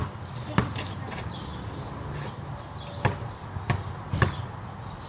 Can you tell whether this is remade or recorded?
recorded